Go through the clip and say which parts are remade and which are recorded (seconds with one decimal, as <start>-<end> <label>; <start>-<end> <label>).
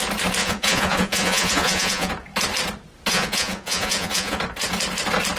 0.0-0.4 recorded; 0.4-2.1 remade; 2.1-3.1 recorded; 3.1-4.4 remade; 4.4-5.4 recorded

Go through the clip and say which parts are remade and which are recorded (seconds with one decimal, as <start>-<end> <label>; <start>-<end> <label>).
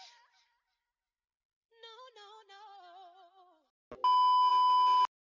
0.0-5.2 recorded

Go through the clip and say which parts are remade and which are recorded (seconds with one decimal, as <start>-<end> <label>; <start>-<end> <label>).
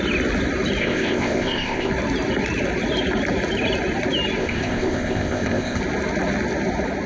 0.0-0.8 recorded; 0.8-1.9 remade; 1.9-4.4 recorded; 4.4-5.8 remade; 5.8-7.1 recorded